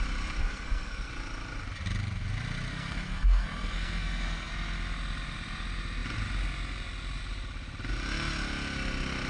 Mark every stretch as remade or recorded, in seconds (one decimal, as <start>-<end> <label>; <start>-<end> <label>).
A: 0.0-0.4 recorded; 0.4-1.1 remade; 1.1-2.7 recorded; 2.7-4.5 remade; 4.5-9.3 recorded